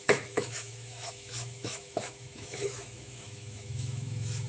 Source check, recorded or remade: remade